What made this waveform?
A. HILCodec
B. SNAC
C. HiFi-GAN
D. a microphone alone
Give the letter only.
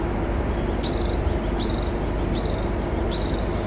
D